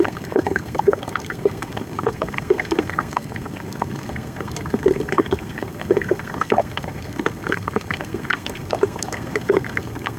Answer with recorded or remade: remade